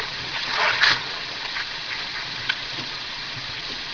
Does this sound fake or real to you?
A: fake